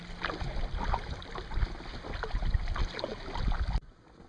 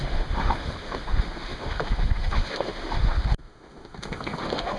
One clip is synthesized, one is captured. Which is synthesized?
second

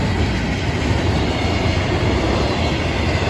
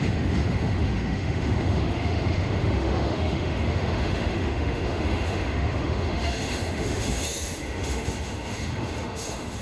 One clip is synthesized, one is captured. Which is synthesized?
second